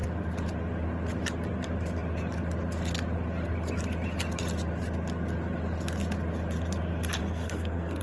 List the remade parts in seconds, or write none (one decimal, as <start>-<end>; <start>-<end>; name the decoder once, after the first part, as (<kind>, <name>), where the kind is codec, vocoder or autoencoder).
7.2-8.0 (codec, SNAC)